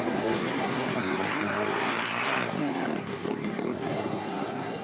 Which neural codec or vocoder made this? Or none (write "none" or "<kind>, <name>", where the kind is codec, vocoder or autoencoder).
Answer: codec, SNAC